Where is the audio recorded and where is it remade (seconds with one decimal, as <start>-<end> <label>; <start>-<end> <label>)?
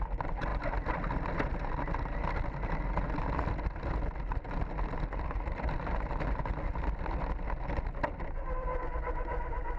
0.0-9.8 recorded